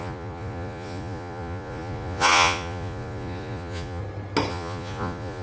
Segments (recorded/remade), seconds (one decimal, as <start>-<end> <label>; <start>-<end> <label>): 0.0-4.0 remade; 4.0-4.5 recorded; 4.5-5.4 remade